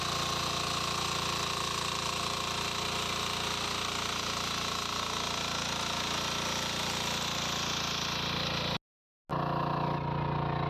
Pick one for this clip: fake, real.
real